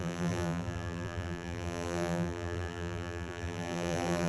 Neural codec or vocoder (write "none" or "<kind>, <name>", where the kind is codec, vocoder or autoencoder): vocoder, BigVGAN v2